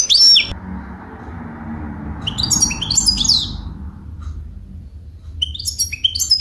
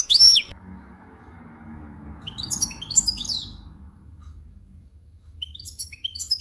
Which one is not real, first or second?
second